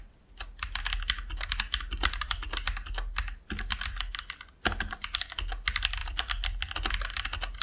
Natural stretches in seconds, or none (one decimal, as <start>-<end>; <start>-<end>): 0.0-7.6